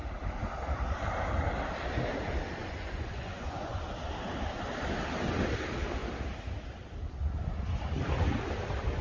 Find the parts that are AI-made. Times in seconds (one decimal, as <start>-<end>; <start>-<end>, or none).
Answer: 2.6-3.8